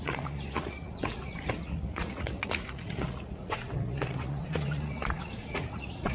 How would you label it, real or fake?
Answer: fake